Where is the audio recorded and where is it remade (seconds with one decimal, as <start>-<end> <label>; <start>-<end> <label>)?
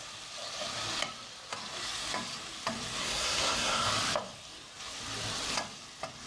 0.0-3.0 recorded; 3.0-3.9 remade; 3.9-6.3 recorded